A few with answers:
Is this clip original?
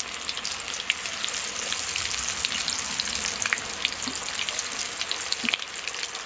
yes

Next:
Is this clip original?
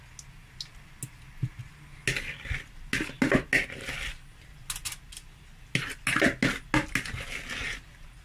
yes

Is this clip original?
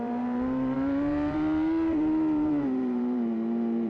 no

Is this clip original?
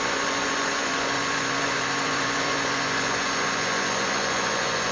no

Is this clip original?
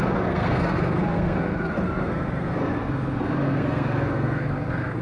no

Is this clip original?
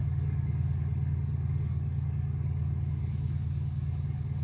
no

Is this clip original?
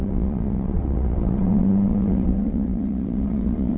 no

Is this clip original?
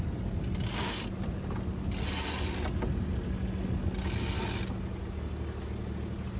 yes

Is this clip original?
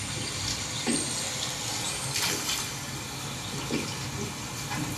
yes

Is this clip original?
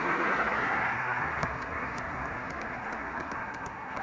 no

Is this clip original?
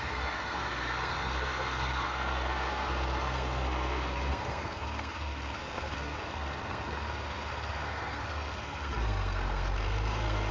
no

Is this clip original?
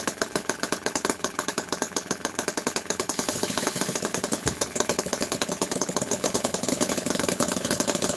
no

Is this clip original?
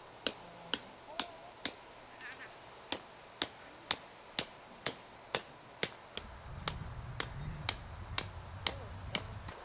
yes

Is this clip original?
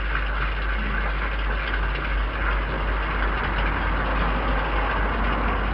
yes